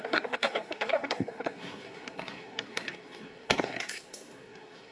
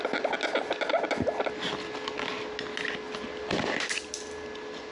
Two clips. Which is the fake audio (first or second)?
first